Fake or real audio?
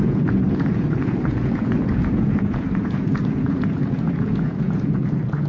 fake